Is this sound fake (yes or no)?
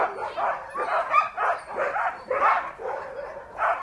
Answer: no